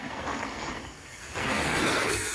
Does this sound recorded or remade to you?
remade